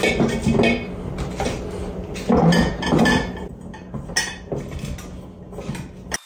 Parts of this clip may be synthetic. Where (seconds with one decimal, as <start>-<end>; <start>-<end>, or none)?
none